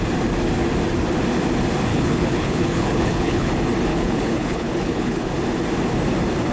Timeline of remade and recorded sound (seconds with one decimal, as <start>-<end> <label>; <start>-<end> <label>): 0.0-1.9 recorded; 1.9-3.5 remade; 3.5-3.9 recorded; 3.9-5.3 remade; 5.3-6.5 recorded